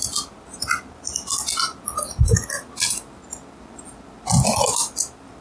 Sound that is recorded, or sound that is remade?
recorded